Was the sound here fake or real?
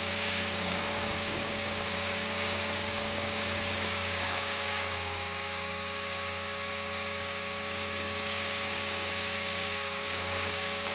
fake